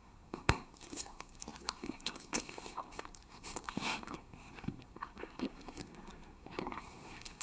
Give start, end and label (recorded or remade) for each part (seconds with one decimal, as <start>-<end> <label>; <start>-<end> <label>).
0.0-7.4 remade